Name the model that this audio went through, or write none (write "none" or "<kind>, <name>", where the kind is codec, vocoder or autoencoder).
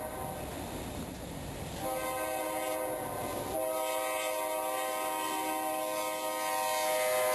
none